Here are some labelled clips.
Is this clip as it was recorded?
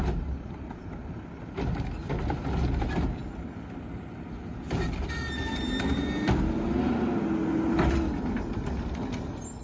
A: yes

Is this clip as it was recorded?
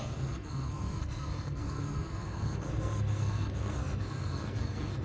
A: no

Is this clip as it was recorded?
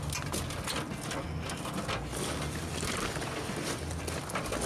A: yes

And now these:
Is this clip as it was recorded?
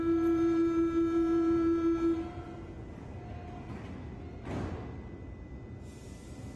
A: yes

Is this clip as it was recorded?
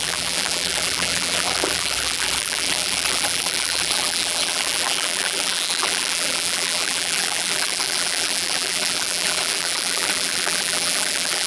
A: no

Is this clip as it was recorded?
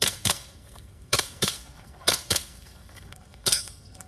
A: no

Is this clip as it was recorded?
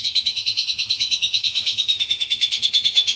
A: no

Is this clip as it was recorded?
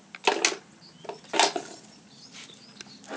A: yes